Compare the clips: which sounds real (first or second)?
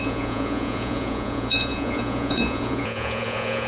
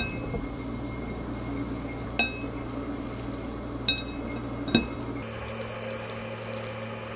second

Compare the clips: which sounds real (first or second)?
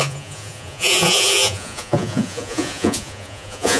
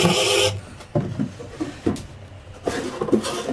second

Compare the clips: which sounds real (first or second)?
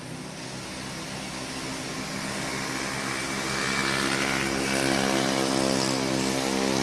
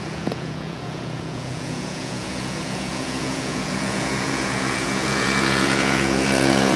first